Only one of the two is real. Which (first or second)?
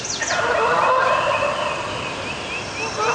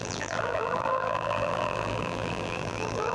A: first